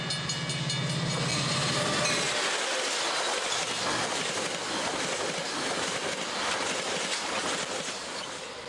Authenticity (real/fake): real